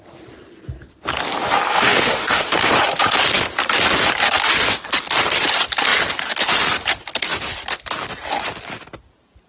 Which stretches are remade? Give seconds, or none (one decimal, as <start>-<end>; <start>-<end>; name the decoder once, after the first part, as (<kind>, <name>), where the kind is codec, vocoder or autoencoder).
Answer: 1.7-2.7 (autoencoder, DAC-VAE)